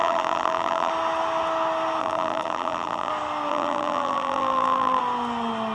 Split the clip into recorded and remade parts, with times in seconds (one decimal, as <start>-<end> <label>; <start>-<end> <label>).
0.0-0.9 remade; 0.9-2.0 recorded; 2.0-3.1 remade; 3.1-3.5 recorded; 3.5-5.0 remade; 5.0-5.7 recorded